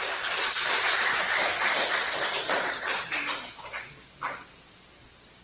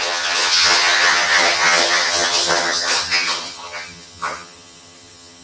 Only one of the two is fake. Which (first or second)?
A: second